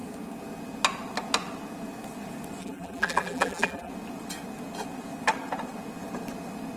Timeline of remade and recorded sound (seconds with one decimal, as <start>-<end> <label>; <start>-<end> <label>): 0.0-2.6 recorded; 2.6-3.9 remade; 3.9-6.8 recorded